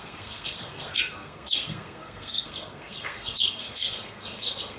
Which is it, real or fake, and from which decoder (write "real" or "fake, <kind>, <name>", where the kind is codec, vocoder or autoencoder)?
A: fake, codec, SNAC